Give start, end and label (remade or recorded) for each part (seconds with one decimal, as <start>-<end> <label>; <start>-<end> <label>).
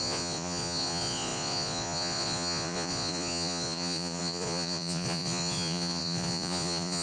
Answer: 0.0-7.0 remade